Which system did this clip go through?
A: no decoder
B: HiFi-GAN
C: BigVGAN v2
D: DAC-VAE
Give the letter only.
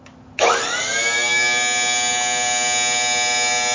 A